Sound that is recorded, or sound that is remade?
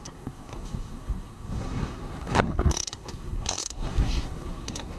remade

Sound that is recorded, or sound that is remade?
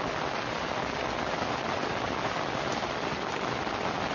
recorded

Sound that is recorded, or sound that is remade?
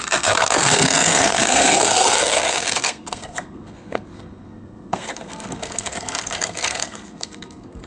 remade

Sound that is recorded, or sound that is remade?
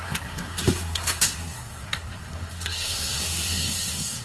remade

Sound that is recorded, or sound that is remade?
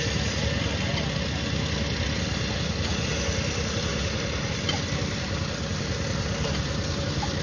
recorded